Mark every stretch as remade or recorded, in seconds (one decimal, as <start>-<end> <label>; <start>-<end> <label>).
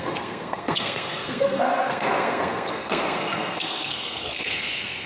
0.0-5.1 remade